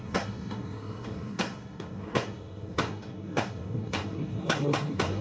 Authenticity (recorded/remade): remade